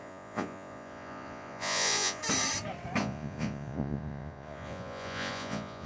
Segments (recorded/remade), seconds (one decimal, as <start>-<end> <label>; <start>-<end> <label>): 0.0-2.2 remade; 2.2-3.0 recorded; 3.0-5.9 remade